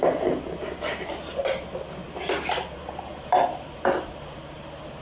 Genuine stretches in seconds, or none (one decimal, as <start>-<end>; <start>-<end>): 0.0-5.0